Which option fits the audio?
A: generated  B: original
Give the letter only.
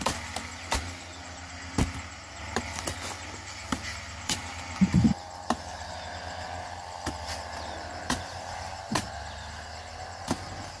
A